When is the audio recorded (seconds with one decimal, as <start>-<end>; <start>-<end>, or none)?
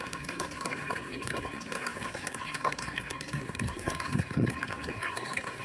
none